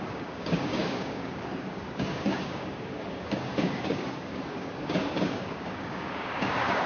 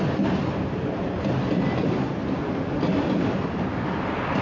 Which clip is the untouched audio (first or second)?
second